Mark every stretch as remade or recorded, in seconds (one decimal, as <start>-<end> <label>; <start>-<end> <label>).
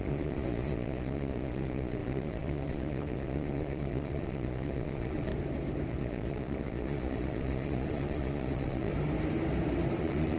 0.0-5.3 remade; 5.3-5.9 recorded; 5.9-8.9 remade; 8.9-10.0 recorded; 10.0-10.4 remade